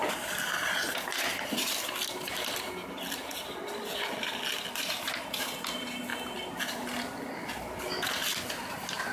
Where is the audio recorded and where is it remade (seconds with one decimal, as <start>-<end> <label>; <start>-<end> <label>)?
0.0-8.2 recorded; 8.2-9.1 remade